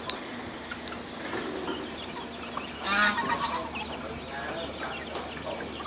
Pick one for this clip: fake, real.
real